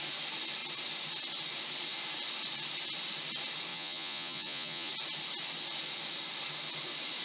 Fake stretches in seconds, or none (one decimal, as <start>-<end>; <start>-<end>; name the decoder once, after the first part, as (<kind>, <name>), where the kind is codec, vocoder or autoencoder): 3.7-4.9 (vocoder, Vocos)